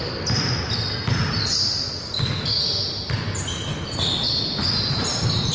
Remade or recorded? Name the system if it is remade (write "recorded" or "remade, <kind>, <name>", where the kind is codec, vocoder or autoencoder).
recorded